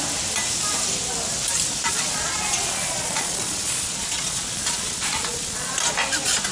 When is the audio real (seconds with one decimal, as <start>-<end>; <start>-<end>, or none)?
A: 0.0-1.8; 5.7-6.5